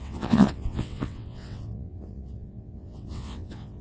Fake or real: fake